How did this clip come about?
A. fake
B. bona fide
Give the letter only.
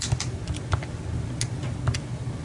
B